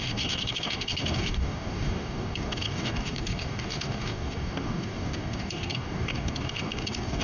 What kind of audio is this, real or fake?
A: fake